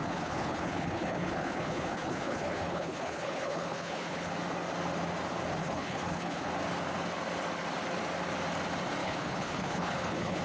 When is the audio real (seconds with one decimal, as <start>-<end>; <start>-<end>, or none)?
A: 4.3-5.6; 6.4-9.0